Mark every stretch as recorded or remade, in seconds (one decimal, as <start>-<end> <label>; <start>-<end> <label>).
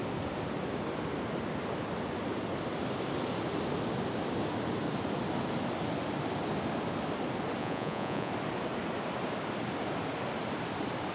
0.0-7.6 recorded; 7.6-8.3 remade; 8.3-11.1 recorded